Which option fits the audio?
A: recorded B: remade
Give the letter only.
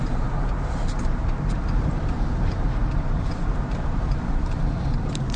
B